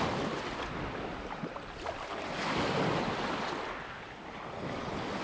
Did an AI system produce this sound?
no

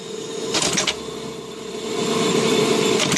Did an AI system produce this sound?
no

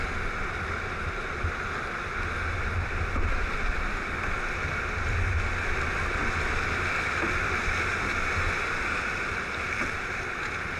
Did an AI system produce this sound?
no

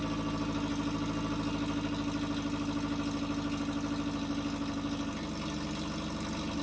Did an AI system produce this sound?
no